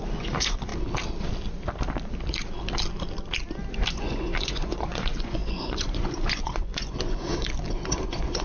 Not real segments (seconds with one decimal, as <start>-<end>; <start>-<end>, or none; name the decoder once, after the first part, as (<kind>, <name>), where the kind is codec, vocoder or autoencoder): 0.0-0.7 (vocoder, Vocos); 3.9-7.3; 7.9-8.4